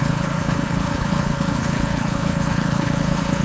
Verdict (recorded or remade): remade